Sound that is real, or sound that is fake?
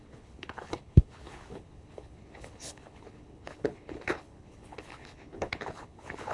fake